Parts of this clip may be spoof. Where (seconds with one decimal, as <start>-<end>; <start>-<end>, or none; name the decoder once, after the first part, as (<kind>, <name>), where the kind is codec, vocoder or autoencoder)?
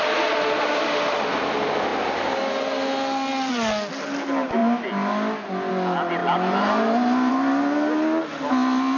none